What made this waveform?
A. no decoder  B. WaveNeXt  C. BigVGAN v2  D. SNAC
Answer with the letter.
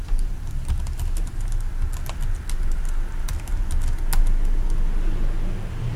A